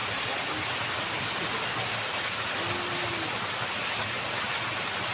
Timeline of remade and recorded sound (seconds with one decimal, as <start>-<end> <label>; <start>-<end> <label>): 0.0-5.1 recorded